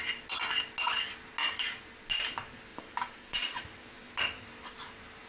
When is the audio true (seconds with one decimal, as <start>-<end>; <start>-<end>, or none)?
0.0-2.7; 4.1-5.3